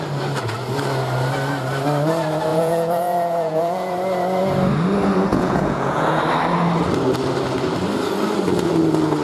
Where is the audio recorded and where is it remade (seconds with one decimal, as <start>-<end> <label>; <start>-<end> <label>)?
0.0-2.5 recorded; 2.5-3.9 remade; 3.9-5.3 recorded; 5.3-6.2 remade; 6.2-9.2 recorded

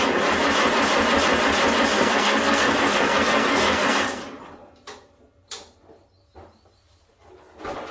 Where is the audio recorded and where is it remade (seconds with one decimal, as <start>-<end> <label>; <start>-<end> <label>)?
0.0-1.9 recorded; 1.9-4.2 remade; 4.2-7.9 recorded

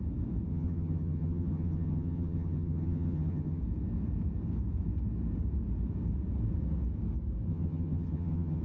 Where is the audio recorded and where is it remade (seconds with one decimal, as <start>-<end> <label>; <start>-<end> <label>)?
0.0-0.5 recorded; 0.5-3.6 remade; 3.6-7.5 recorded; 7.5-8.6 remade

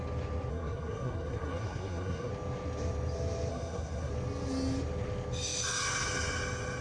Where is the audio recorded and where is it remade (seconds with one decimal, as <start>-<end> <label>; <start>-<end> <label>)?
0.0-0.5 recorded; 0.5-2.3 remade; 2.3-3.5 recorded; 3.5-4.1 remade; 4.1-6.8 recorded

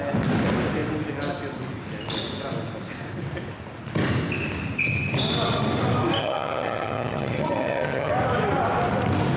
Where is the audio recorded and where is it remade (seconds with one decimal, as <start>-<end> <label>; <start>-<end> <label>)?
0.0-6.2 recorded; 6.2-8.1 remade; 8.1-9.4 recorded